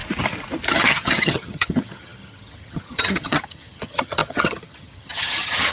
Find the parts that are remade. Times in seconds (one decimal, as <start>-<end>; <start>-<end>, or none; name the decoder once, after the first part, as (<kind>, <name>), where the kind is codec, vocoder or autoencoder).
0.7-5.7 (vocoder, HiFi-GAN)